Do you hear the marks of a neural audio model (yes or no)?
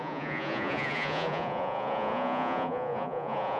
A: yes